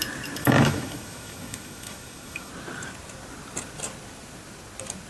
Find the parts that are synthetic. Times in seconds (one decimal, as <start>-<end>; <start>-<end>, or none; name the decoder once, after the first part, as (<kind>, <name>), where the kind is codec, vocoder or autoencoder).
0.4-2.5 (autoencoder, DAC-VAE)